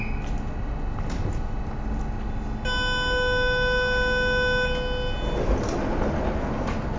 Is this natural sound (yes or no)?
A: yes